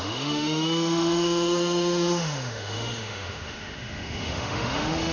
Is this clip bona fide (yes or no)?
no